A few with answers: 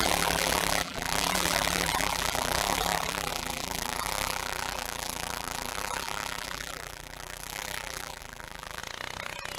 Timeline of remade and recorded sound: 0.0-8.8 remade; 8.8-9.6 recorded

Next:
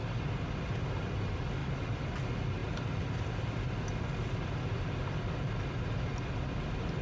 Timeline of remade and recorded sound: 0.0-0.5 remade; 0.5-1.6 recorded; 1.6-2.1 remade; 2.1-7.0 recorded

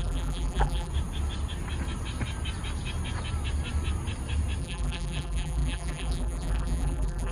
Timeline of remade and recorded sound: 0.0-0.9 remade; 0.9-4.6 recorded; 4.6-7.3 remade

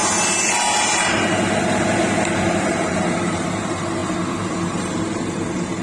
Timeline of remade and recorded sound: 0.0-2.6 recorded; 2.6-4.0 remade; 4.0-4.5 recorded; 4.5-5.8 remade

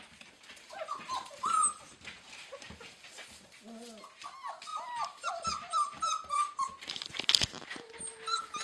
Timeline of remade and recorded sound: 0.0-1.8 recorded; 1.8-2.7 remade; 2.7-8.6 recorded

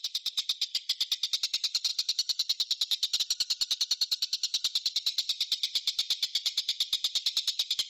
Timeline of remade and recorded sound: 0.0-1.9 recorded; 1.9-3.2 remade; 3.2-5.1 recorded; 5.1-6.4 remade; 6.4-7.9 recorded

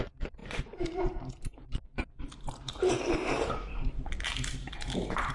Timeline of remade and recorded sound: 0.0-5.3 remade

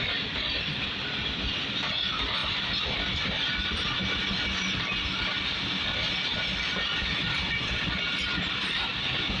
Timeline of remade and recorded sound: 0.0-1.2 recorded; 1.2-2.0 remade; 2.0-9.4 recorded